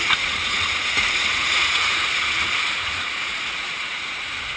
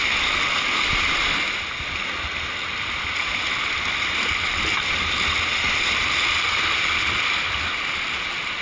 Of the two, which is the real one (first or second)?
second